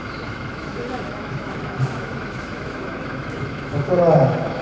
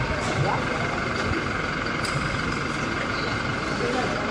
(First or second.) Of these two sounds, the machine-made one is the first